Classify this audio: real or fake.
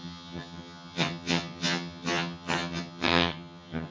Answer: fake